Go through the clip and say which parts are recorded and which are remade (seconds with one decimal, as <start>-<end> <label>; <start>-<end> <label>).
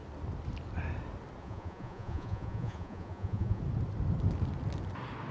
0.0-1.4 recorded; 1.4-3.6 remade; 3.6-5.3 recorded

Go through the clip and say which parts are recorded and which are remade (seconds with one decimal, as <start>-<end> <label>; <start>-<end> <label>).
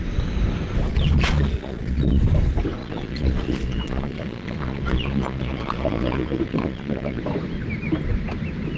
0.0-0.9 recorded; 0.9-2.2 remade; 2.2-2.8 recorded; 2.8-7.2 remade; 7.2-8.8 recorded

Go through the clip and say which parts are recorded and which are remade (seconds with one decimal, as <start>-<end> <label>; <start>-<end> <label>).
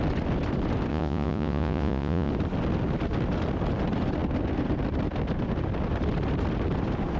0.0-0.9 recorded; 0.9-2.3 remade; 2.3-7.2 recorded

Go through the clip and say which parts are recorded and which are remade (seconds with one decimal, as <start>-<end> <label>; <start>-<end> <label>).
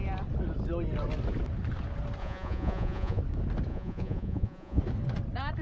0.0-2.2 recorded; 2.2-3.2 remade; 3.2-3.7 recorded; 3.7-4.8 remade; 4.8-5.6 recorded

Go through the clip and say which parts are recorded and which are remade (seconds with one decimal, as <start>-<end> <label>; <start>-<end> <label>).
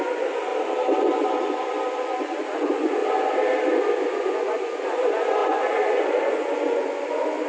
0.0-0.5 remade; 0.5-1.1 recorded; 1.1-3.0 remade; 3.0-4.0 recorded; 4.0-7.5 remade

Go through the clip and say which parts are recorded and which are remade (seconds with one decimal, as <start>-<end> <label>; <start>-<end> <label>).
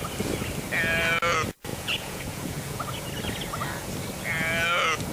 0.0-1.7 recorded; 1.7-3.0 remade; 3.0-5.1 recorded